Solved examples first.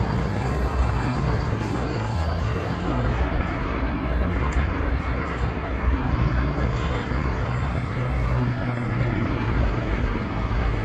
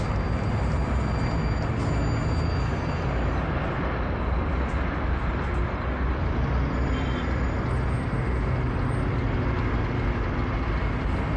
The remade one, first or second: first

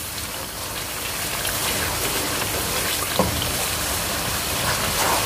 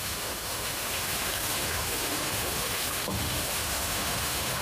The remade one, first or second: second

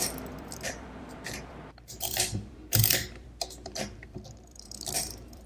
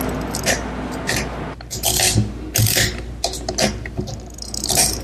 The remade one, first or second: first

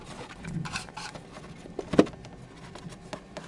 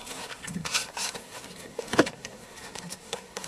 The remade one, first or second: second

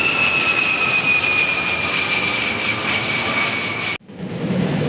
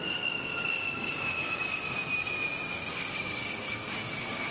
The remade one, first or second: second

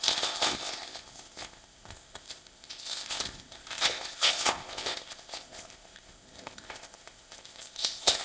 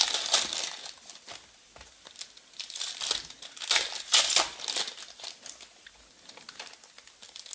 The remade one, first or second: first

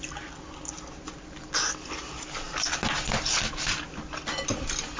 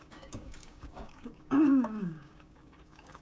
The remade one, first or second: second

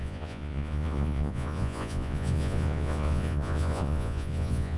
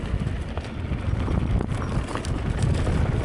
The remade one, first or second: first